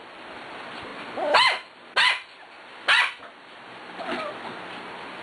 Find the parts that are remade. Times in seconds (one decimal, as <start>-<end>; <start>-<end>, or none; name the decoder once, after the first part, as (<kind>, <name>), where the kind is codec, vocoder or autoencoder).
none